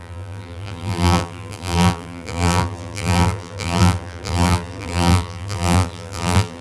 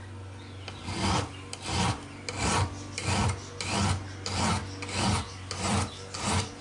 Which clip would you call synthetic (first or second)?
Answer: first